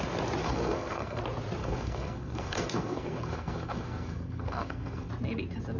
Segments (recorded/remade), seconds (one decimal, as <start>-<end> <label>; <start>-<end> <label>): 0.0-0.4 recorded; 0.4-1.2 remade; 1.2-1.6 recorded; 1.6-5.1 remade; 5.1-5.8 recorded